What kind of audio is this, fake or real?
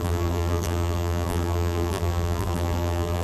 fake